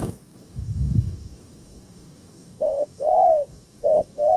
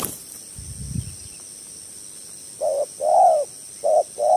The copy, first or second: first